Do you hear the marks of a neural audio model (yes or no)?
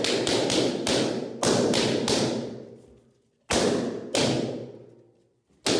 no